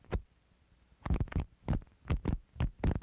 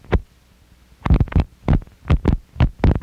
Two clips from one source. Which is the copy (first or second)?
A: first